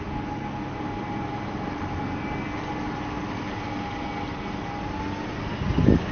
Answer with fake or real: real